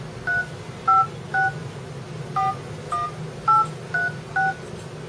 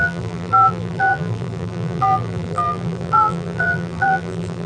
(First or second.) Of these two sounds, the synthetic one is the second